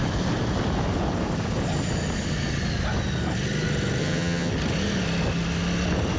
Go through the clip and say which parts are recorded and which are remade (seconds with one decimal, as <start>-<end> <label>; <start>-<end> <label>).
0.0-4.0 recorded; 4.0-4.5 remade; 4.5-6.2 recorded